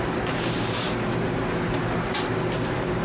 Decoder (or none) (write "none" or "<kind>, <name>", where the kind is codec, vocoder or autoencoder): vocoder, BigVGAN v2